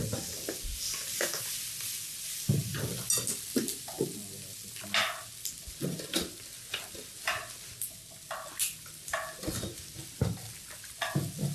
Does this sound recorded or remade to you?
recorded